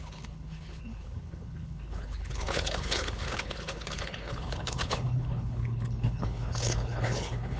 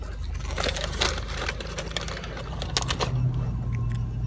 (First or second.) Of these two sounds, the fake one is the first